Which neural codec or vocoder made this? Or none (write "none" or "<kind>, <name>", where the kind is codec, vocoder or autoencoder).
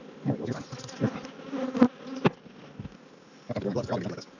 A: none